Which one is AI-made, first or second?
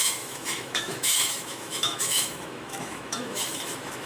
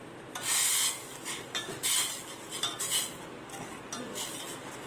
first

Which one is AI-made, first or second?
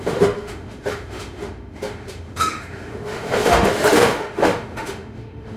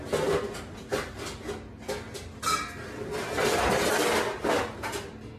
first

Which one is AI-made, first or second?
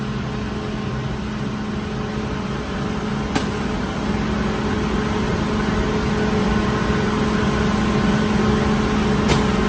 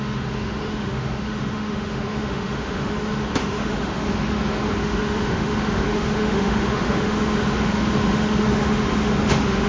second